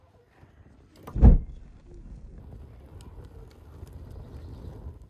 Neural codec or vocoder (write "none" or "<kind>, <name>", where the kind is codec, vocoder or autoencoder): none